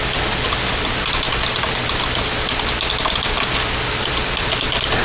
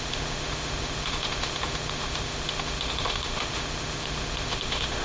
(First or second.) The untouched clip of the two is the first